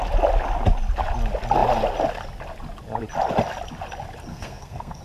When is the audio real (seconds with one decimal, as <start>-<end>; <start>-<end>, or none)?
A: 0.0-4.3